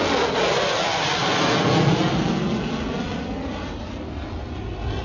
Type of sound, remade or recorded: recorded